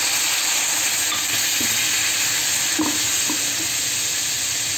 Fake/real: real